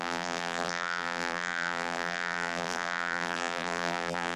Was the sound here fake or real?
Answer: fake